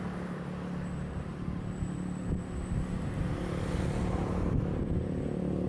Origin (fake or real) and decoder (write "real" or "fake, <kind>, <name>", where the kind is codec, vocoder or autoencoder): real